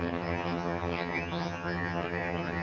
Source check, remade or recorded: remade